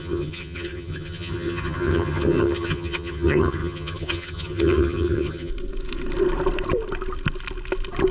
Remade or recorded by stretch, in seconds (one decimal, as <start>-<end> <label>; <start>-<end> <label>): 0.0-5.5 remade; 5.5-8.1 recorded